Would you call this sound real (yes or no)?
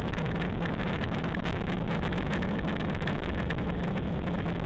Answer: no